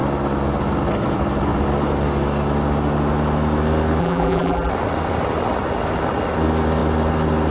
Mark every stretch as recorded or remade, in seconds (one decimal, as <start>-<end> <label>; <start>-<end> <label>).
0.0-4.0 recorded; 4.0-4.7 remade; 4.7-7.5 recorded